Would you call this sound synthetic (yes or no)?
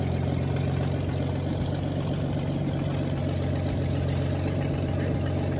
no